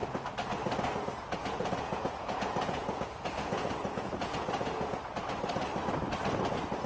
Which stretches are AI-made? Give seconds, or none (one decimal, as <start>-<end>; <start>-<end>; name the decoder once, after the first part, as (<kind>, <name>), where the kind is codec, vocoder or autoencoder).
1.4-5.0 (vocoder, Vocos)